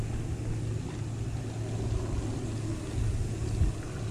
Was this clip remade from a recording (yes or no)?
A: no